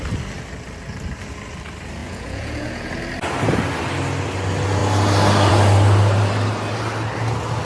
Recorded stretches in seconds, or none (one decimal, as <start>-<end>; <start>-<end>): 0.0-2.0; 2.9-7.6